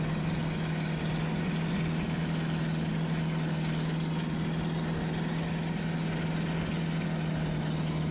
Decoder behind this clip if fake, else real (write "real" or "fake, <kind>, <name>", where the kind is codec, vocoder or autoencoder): real